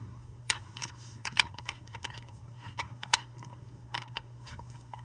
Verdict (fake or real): fake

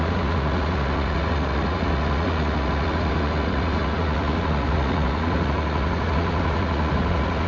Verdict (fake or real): fake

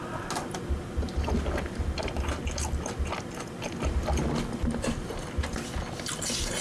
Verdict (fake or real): real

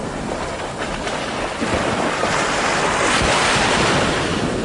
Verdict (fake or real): real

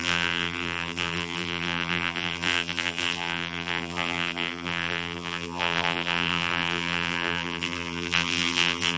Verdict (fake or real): fake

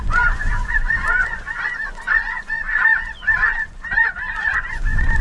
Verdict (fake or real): fake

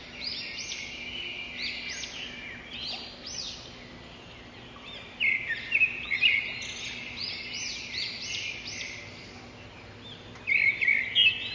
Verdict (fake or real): real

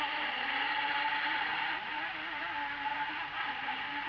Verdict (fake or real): real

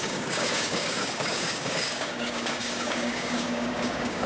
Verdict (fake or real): fake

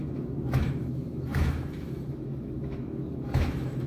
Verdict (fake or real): fake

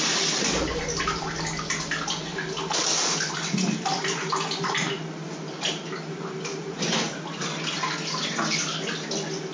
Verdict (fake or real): real